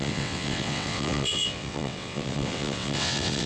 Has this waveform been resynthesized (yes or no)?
yes